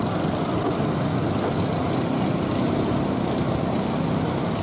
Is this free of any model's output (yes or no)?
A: yes